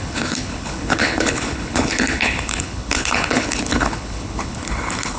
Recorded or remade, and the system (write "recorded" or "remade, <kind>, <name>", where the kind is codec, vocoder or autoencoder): remade, codec, HILCodec